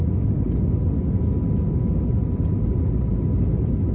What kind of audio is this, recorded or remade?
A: recorded